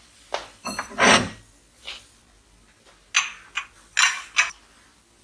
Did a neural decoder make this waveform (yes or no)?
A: no